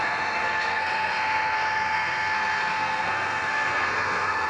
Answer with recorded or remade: remade